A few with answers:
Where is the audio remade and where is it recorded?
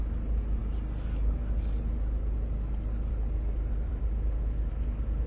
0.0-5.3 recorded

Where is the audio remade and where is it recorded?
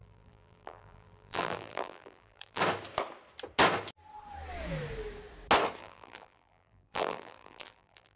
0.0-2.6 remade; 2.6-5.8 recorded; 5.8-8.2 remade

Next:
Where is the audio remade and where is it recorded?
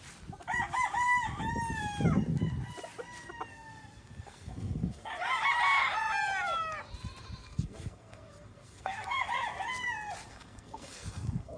0.0-3.5 recorded; 3.5-5.1 remade; 5.1-7.4 recorded; 7.4-9.3 remade; 9.3-10.3 recorded; 10.3-11.6 remade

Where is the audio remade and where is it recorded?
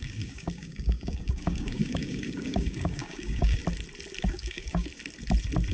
0.0-3.6 remade; 3.6-4.3 recorded; 4.3-4.9 remade; 4.9-5.7 recorded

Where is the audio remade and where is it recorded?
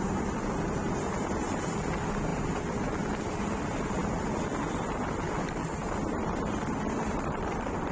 0.0-7.9 recorded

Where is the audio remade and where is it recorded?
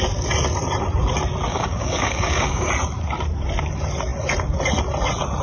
0.0-1.5 recorded; 1.5-2.7 remade; 2.7-5.4 recorded